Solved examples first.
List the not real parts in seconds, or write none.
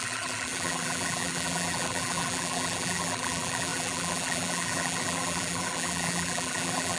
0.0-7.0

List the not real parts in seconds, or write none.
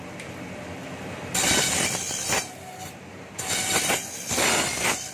0.8-3.9